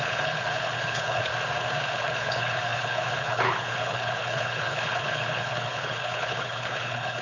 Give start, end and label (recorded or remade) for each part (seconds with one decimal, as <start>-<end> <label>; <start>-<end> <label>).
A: 0.0-1.3 remade; 1.3-1.8 recorded; 1.8-7.2 remade